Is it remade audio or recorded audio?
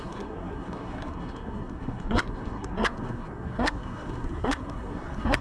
remade